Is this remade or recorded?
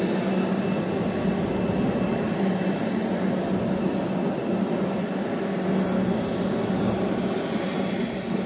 recorded